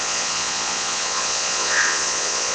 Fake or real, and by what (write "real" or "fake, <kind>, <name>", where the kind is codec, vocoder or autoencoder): fake, vocoder, Vocos